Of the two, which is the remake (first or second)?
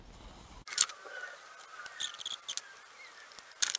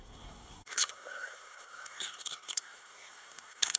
second